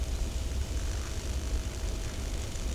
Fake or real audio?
fake